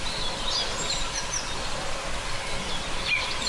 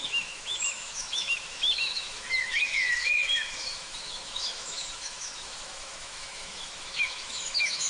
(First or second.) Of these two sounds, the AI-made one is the second